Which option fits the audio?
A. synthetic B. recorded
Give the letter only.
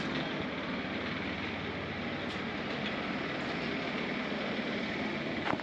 B